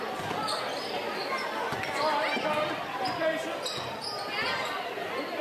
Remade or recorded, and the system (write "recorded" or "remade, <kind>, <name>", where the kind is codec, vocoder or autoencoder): recorded